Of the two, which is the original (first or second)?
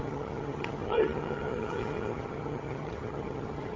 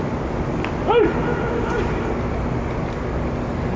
second